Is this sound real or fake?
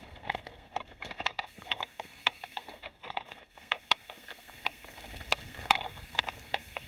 fake